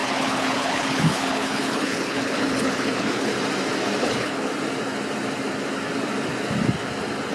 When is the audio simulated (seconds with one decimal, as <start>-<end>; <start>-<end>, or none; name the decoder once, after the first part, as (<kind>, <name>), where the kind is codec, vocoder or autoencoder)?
0.0-3.3 (codec, HILCodec); 4.0-4.5